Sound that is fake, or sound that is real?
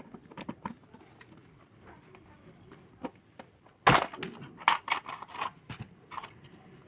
real